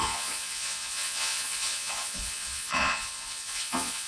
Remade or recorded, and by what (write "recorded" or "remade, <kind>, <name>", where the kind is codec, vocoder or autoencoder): remade, vocoder, Vocos